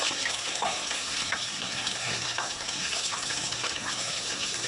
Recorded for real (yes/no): no